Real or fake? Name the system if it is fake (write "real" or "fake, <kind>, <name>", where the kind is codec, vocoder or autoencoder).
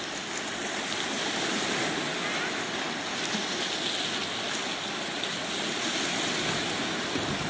real